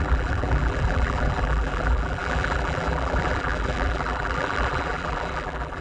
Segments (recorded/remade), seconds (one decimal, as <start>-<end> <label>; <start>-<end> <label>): 0.0-5.8 remade